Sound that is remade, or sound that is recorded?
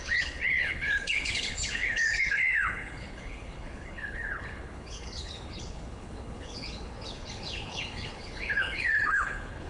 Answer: remade